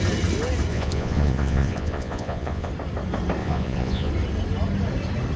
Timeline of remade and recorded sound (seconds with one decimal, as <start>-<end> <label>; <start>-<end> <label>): 0.0-0.7 recorded; 0.7-2.7 remade; 2.7-3.4 recorded; 3.4-4.1 remade; 4.1-5.4 recorded